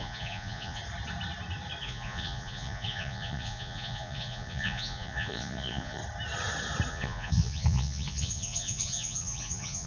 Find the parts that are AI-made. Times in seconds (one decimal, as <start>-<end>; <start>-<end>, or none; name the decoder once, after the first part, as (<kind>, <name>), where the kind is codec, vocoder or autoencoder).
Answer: 0.0-0.8 (vocoder, Vocos); 1.8-6.0; 6.9-9.9